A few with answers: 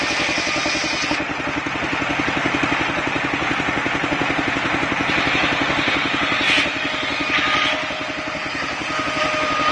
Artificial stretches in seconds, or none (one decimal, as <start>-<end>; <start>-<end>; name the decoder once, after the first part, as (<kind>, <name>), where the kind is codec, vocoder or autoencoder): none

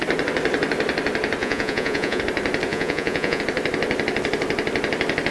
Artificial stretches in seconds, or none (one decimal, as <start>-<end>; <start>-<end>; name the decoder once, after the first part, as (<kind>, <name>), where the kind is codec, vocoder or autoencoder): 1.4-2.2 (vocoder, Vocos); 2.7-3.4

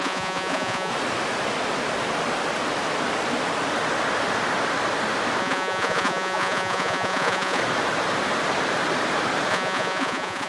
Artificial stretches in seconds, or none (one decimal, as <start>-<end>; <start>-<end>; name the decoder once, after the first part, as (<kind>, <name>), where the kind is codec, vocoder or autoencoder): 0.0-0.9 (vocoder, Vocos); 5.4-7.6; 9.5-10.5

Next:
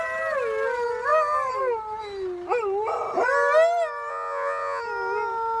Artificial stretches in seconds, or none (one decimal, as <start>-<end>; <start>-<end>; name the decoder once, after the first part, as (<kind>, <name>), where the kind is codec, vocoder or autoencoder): 4.1-4.8 (vocoder, Vocos)